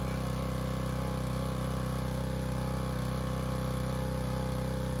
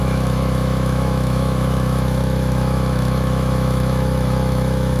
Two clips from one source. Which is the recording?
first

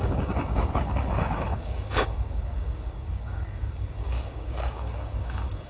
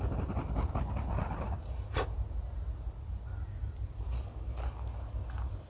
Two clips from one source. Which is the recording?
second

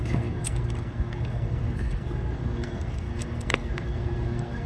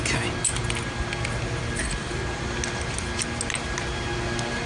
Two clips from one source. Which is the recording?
second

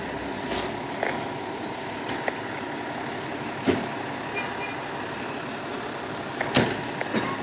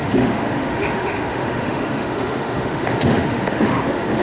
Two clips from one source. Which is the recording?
first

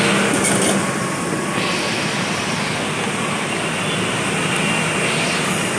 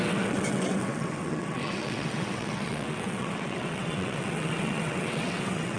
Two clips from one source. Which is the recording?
first